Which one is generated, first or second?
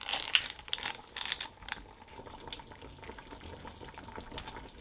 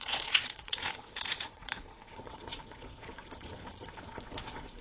second